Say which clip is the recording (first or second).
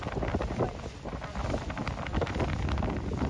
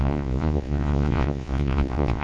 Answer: first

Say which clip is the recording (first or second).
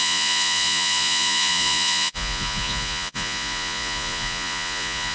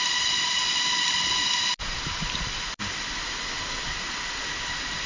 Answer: second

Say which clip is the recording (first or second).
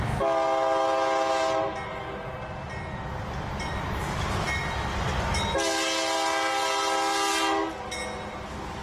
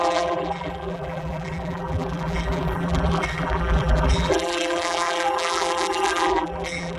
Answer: first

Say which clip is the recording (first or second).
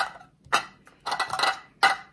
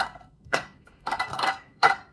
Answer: first